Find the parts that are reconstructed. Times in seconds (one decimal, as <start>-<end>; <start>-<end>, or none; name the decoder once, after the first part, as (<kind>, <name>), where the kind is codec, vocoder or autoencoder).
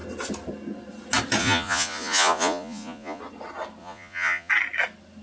1.4-3.2 (vocoder, Vocos); 3.8-4.5